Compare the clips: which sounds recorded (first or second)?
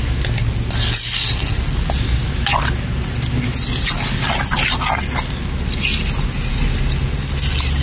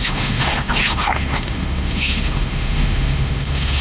first